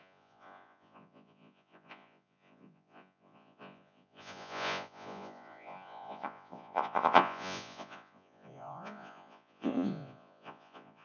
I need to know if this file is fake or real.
fake